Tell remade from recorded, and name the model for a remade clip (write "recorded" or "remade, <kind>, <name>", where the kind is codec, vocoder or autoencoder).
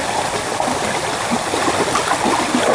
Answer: recorded